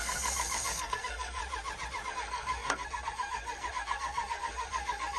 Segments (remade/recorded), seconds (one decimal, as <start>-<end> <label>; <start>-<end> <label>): 0.0-1.4 remade; 1.4-2.1 recorded; 2.1-5.2 remade